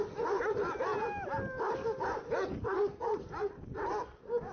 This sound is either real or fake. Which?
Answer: real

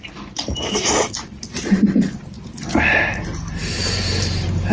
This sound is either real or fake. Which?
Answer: fake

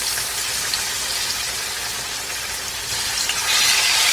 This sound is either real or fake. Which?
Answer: real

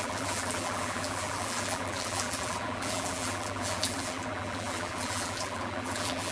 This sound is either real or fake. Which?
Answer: fake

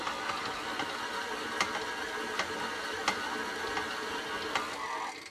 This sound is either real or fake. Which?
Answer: real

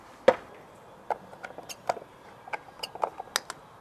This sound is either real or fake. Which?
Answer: real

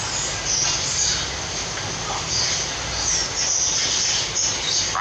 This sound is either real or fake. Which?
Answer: real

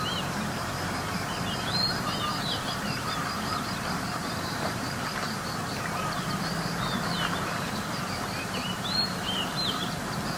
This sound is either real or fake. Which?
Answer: fake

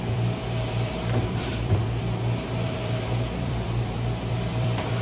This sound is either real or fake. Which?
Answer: fake